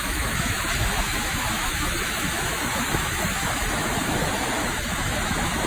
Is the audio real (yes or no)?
no